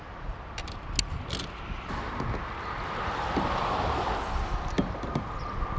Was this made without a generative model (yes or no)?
yes